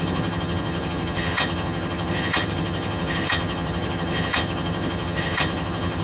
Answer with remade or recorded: remade